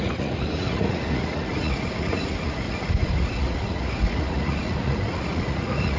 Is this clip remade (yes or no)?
yes